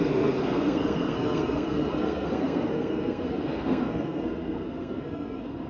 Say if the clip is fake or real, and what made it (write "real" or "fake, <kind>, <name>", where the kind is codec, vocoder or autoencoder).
fake, codec, SNAC